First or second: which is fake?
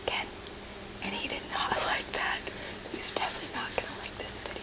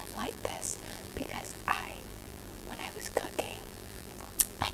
second